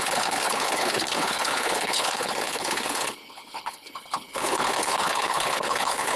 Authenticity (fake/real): fake